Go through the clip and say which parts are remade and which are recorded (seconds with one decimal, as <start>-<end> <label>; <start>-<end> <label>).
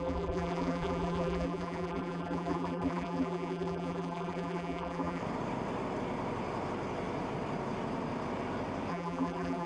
0.0-5.2 remade; 5.2-8.9 recorded; 8.9-9.7 remade